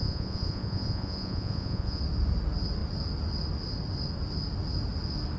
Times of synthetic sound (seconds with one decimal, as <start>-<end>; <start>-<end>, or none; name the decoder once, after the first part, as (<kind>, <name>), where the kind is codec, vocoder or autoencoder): 0.0-2.0 (vocoder, Vocos)